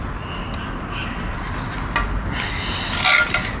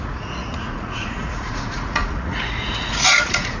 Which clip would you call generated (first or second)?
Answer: second